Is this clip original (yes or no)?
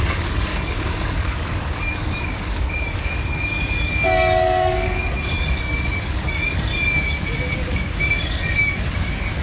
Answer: no